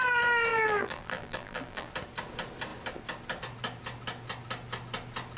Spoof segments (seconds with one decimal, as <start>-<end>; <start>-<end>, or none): 0.5-1.9